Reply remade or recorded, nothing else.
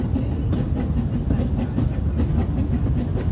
recorded